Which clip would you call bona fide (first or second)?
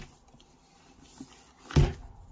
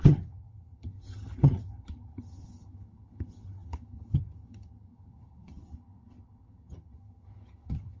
first